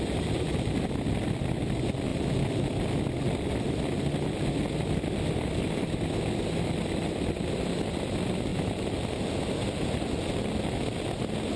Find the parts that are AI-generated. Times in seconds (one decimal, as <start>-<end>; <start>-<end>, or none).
none